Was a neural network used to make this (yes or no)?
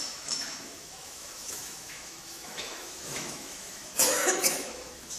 yes